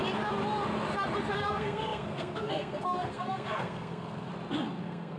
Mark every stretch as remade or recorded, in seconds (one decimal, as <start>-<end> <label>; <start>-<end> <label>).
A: 0.0-1.3 recorded; 1.3-4.3 remade; 4.3-4.8 recorded; 4.8-5.2 remade